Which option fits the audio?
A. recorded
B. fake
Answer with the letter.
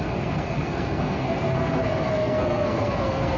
B